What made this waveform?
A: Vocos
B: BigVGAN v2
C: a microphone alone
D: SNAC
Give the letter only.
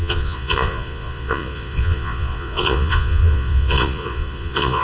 A